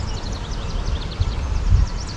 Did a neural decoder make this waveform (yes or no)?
no